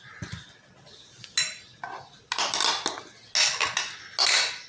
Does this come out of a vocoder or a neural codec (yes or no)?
no